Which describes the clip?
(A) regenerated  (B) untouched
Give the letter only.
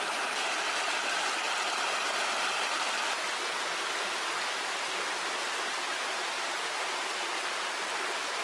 B